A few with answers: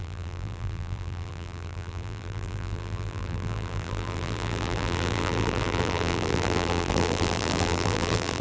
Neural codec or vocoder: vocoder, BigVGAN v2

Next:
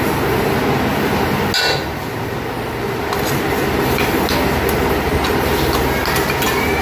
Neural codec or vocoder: none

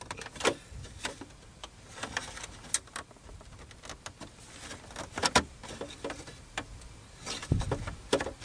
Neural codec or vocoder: none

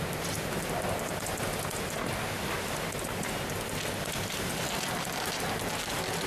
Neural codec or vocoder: none